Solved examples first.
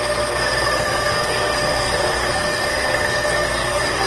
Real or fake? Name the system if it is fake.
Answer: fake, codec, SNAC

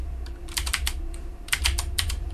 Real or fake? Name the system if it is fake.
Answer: fake, vocoder, BigVGAN v2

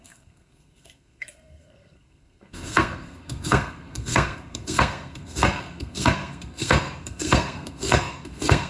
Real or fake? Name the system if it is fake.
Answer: fake, codec, SNAC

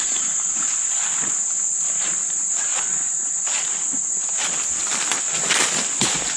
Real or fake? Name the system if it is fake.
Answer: real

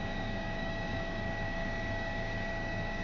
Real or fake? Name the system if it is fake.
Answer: fake, codec, DAC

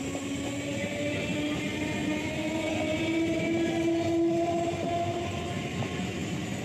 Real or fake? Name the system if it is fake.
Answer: real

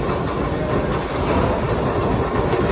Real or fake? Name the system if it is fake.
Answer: real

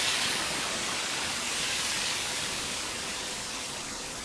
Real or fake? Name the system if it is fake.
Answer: fake, codec, DAC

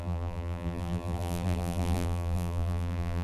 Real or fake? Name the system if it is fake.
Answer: fake, vocoder, BigVGAN v2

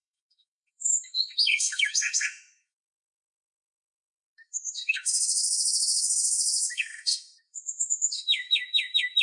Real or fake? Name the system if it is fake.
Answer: fake, autoencoder, DAC-VAE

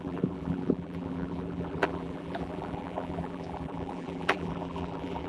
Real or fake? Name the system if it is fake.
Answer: fake, vocoder, BigVGAN v2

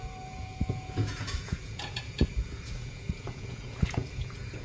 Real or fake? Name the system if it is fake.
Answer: fake, vocoder, Vocos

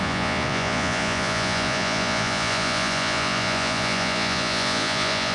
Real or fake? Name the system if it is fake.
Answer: fake, vocoder, Vocos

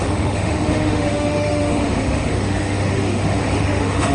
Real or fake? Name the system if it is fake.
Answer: fake, autoencoder, DAC-VAE